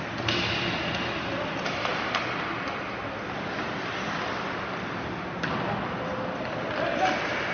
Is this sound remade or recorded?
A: recorded